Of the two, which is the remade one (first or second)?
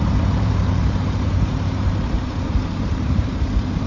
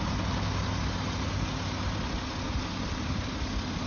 first